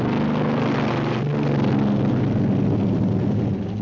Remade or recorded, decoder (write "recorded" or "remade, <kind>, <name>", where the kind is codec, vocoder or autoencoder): recorded